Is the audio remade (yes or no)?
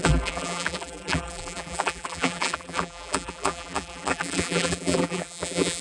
yes